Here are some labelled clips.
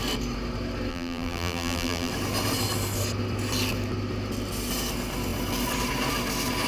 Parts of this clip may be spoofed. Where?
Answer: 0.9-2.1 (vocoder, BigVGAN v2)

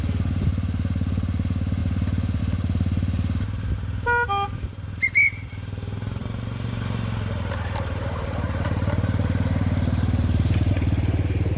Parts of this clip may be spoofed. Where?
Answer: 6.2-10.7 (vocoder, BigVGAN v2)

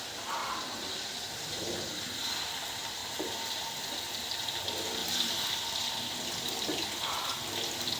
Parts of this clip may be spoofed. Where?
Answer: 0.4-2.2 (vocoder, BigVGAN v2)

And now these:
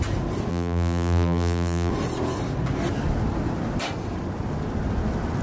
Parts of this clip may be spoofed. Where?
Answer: 0.5-1.9 (vocoder, BigVGAN v2)